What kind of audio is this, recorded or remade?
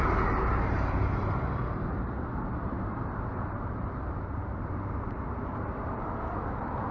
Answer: remade